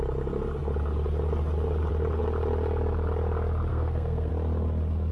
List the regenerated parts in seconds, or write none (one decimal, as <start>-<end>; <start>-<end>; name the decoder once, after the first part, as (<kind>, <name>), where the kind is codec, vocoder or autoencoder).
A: 3.7-4.3 (codec, SNAC)